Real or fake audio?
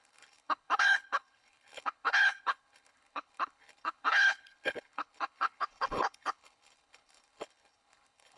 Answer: fake